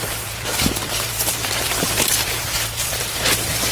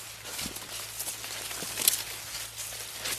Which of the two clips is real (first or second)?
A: second